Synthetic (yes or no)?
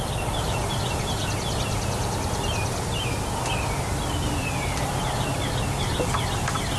no